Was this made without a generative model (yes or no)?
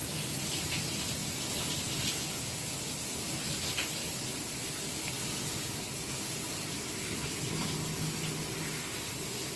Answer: yes